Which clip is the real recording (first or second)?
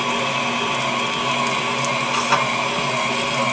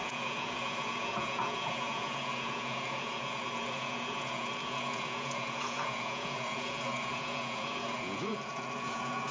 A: first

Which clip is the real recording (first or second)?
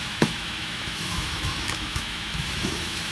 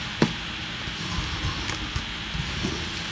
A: second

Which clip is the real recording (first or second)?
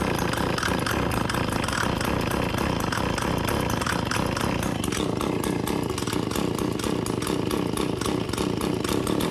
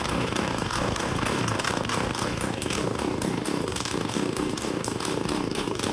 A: first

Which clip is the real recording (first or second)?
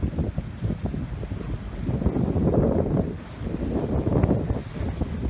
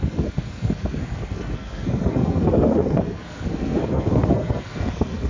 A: first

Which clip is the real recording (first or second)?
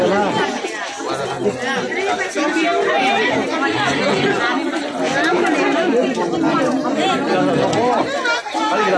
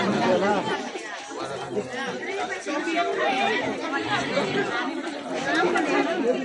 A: first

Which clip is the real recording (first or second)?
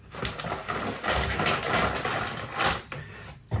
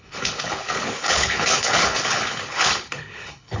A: first